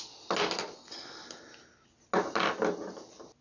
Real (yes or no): yes